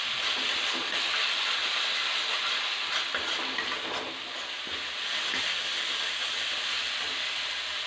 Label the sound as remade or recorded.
recorded